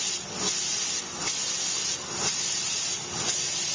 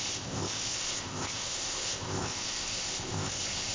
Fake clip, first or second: second